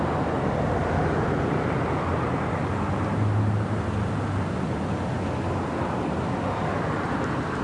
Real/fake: real